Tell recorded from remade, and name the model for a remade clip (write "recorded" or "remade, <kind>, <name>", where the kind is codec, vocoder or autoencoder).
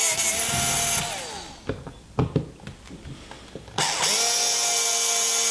recorded